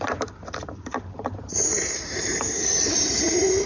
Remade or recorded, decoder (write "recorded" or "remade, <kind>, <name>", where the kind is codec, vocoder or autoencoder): remade, vocoder, BigVGAN v2